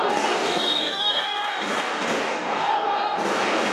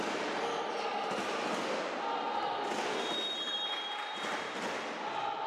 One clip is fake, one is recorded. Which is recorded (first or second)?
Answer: second